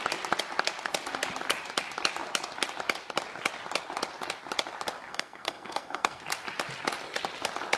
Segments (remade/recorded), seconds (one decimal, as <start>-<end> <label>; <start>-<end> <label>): 0.0-5.1 recorded; 5.1-6.2 remade; 6.2-7.8 recorded